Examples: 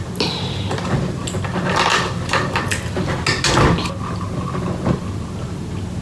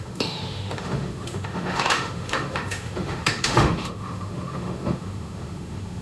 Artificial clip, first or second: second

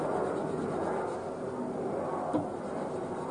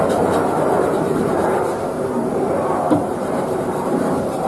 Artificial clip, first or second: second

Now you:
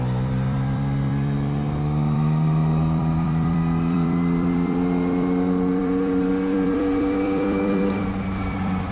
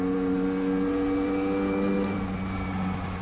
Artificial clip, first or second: first